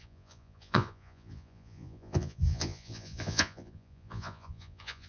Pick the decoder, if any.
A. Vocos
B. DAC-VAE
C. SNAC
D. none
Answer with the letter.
A